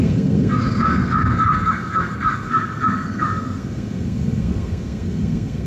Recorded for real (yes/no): no